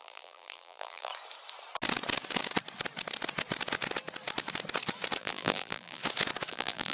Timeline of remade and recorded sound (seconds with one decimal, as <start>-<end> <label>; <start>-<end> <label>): 0.0-1.1 remade; 1.1-5.2 recorded; 5.2-6.0 remade; 6.0-6.5 recorded; 6.5-6.9 remade